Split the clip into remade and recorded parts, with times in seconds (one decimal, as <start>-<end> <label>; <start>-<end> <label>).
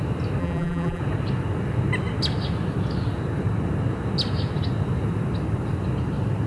0.0-0.4 recorded; 0.4-1.0 remade; 1.0-6.5 recorded